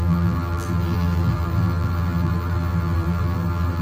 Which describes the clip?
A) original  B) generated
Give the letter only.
B